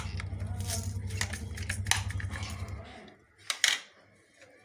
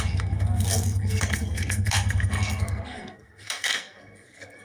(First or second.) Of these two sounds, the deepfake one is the second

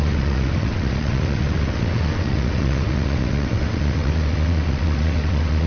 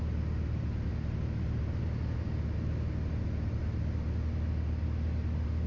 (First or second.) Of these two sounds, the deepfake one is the first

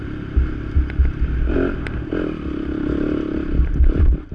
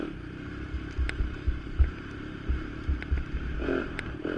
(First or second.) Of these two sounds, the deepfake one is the second